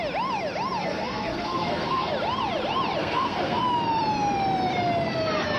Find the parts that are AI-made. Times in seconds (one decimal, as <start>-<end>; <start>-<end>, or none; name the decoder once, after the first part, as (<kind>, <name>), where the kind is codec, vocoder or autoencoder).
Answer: 0.8-2.1 (codec, SNAC); 3.0-3.6